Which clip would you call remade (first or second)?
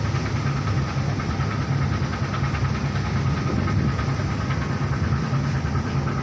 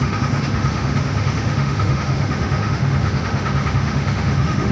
second